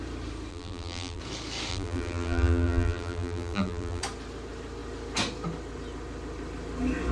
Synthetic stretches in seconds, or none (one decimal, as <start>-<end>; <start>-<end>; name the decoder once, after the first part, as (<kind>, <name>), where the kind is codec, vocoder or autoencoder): 0.5-1.2 (vocoder, BigVGAN v2); 1.7-4.0